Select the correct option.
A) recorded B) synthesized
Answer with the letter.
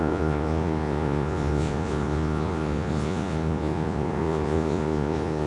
B